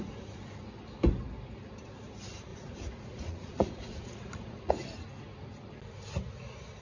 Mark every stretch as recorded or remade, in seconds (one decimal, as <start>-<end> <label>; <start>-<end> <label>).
0.0-2.5 recorded; 2.5-4.7 remade; 4.7-6.8 recorded

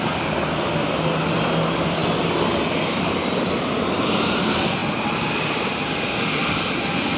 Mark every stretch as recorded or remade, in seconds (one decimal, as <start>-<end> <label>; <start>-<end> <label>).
0.0-7.2 recorded

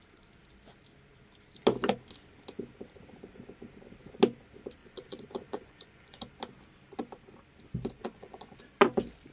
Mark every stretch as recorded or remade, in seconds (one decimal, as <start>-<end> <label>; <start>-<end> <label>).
0.0-4.8 recorded; 4.8-6.2 remade; 6.2-8.0 recorded; 8.0-8.6 remade; 8.6-9.3 recorded

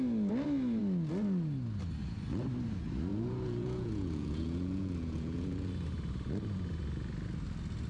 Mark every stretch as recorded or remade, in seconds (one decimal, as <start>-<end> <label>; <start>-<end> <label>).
0.0-3.1 recorded; 3.1-5.7 remade; 5.7-7.9 recorded

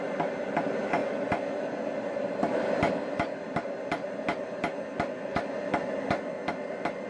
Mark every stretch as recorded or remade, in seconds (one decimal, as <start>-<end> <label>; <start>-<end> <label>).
0.0-7.1 recorded

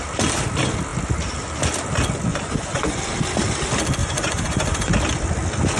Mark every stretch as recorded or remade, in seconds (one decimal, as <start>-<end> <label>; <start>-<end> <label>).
0.0-2.3 recorded; 2.3-3.0 remade; 3.0-4.0 recorded; 4.0-4.9 remade; 4.9-5.8 recorded

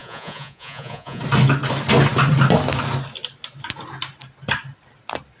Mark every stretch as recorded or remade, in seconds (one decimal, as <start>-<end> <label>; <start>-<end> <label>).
0.0-1.2 remade; 1.2-5.4 recorded

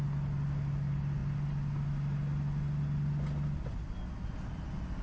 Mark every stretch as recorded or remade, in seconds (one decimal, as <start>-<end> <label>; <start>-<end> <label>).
0.0-5.0 recorded